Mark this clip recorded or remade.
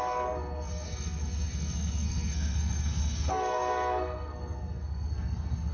remade